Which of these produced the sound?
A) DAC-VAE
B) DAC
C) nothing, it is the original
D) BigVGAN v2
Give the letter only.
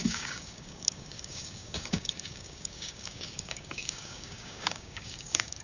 B